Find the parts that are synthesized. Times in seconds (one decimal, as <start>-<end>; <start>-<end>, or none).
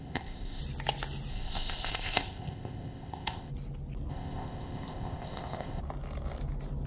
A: 0.0-0.6; 1.3-3.5; 4.1-5.8